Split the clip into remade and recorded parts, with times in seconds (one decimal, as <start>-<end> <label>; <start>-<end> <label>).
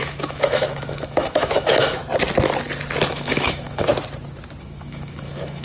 0.0-2.0 remade; 2.0-3.1 recorded; 3.1-3.9 remade; 3.9-4.6 recorded; 4.6-5.6 remade